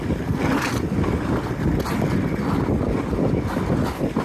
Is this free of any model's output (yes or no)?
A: yes